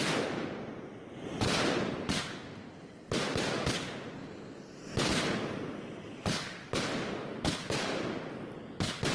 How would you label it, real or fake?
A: real